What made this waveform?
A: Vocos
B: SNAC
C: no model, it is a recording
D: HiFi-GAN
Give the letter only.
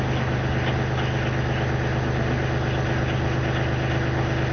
C